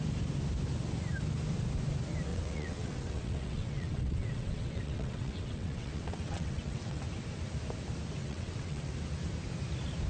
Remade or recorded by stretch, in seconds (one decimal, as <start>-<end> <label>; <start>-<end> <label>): 0.0-2.3 recorded; 2.3-7.0 remade; 7.0-8.2 recorded; 8.2-8.9 remade; 8.9-10.1 recorded